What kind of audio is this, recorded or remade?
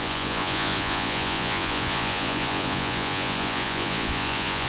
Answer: remade